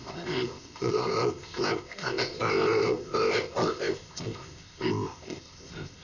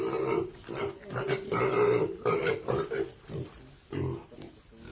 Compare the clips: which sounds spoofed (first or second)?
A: first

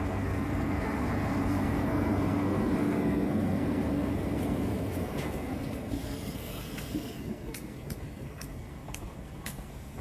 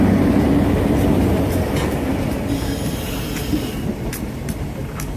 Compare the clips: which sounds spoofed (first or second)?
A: first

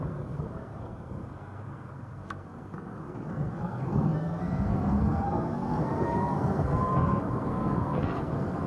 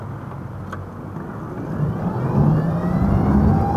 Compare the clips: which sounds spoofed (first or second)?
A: first